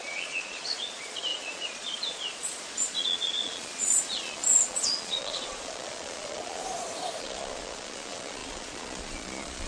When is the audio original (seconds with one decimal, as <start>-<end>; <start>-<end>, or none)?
6.6-7.2